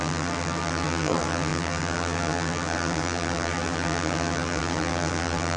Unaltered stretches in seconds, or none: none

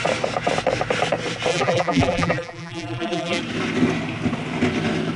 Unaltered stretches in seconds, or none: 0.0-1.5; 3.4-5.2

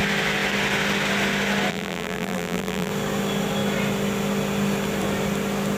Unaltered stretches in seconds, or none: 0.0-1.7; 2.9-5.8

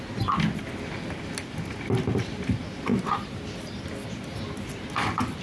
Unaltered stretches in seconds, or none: 0.0-2.9; 3.5-5.4

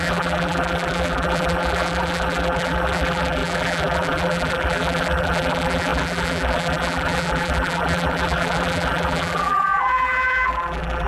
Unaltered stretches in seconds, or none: none